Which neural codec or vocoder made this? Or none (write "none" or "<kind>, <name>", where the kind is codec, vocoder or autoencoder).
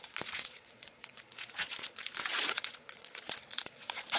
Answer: vocoder, Vocos